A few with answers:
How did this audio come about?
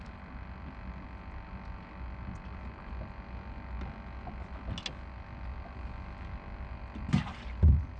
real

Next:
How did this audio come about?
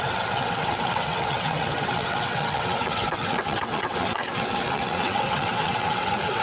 fake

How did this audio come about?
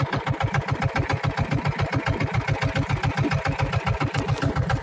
real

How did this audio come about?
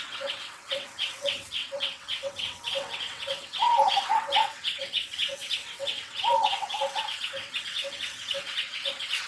fake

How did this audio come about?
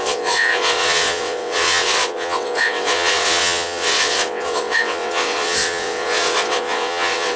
fake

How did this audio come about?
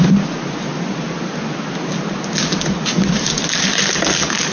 real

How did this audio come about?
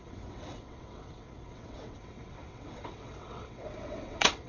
fake